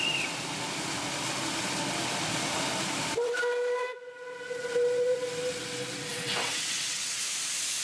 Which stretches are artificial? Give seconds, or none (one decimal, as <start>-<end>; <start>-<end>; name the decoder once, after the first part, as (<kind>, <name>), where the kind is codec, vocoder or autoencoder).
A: 6.1-7.2 (vocoder, WaveNeXt)